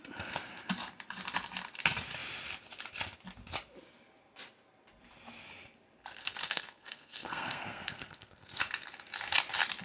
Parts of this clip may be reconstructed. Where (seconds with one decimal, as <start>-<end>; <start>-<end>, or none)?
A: 6.2-8.6